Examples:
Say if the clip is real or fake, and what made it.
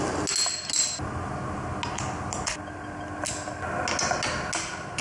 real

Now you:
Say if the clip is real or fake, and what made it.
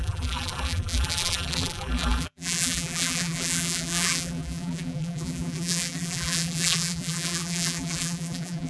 fake, vocoder, BigVGAN v2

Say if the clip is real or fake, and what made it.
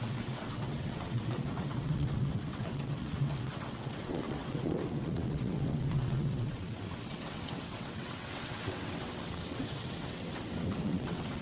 fake, vocoder, WaveNeXt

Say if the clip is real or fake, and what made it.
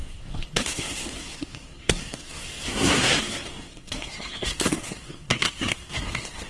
fake, codec, SNAC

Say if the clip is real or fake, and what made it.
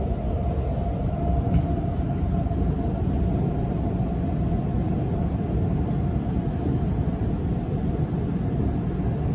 real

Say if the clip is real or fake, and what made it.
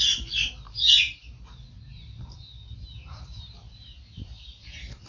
fake, vocoder, BigVGAN v2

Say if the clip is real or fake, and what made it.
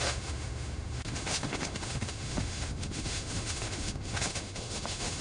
fake, autoencoder, DAC-VAE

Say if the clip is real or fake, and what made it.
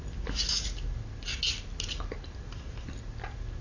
real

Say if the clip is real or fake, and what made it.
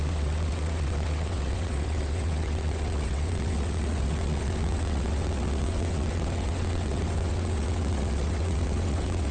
fake, vocoder, WaveNeXt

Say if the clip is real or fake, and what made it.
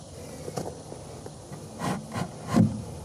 real